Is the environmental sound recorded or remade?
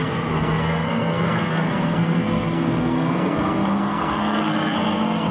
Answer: remade